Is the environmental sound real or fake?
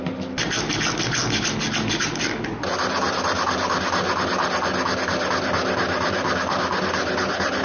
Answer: real